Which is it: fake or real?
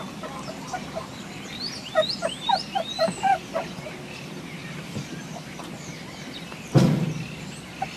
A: real